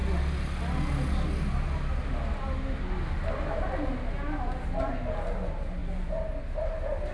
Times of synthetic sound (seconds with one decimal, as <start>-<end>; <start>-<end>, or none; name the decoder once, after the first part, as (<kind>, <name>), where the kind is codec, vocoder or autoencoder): none